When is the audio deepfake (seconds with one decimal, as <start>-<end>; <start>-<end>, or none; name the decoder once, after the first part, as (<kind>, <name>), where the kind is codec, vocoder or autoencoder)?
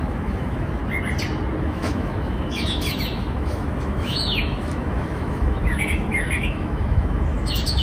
0.0-0.8 (autoencoder, DAC-VAE); 1.6-7.8